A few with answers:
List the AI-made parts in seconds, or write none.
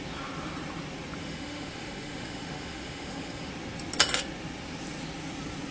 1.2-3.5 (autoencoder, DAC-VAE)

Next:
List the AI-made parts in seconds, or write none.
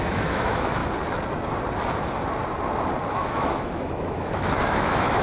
0.0-0.8 (autoencoder, DAC-VAE); 3.0-5.2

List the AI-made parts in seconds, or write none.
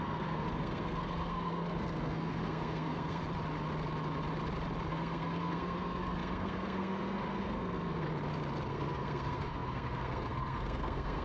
0.0-3.2 (codec, SNAC); 4.9-8.1; 8.7-11.2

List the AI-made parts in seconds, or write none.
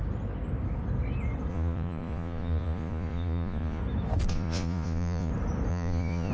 1.5-3.8 (vocoder, Vocos); 4.3-5.3; 5.7-6.3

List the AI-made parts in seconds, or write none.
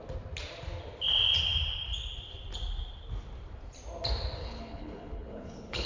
4.4-5.9 (codec, HILCodec)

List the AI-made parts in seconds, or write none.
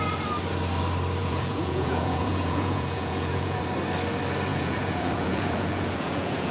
1.2-3.6 (vocoder, Vocos); 4.5-6.5